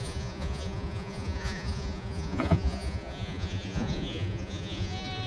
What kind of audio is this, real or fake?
fake